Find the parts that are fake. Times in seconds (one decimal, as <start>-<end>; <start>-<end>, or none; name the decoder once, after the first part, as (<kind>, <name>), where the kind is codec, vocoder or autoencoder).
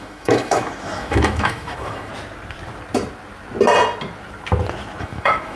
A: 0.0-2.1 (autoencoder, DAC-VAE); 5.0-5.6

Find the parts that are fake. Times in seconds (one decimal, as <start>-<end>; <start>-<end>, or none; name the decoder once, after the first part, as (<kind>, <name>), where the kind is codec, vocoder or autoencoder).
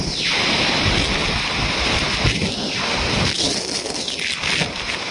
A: none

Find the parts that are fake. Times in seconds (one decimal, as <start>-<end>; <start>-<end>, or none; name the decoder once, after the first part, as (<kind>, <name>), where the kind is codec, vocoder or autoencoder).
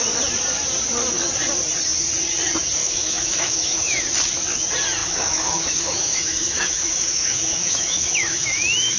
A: 2.8-4.0 (autoencoder, DAC-VAE); 5.0-9.0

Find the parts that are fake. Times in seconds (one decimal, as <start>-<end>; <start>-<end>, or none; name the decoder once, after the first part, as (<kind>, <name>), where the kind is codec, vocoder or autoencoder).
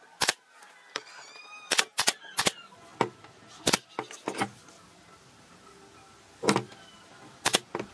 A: none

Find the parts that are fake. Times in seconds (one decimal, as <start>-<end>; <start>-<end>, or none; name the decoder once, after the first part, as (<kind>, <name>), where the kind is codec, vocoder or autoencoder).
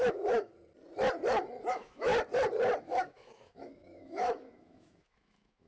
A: 0.0-0.5 (autoencoder, DAC-VAE); 1.7-2.1; 2.8-5.7